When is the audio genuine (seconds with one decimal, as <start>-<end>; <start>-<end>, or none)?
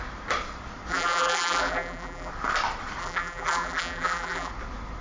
0.0-0.9; 2.3-3.0; 4.5-5.0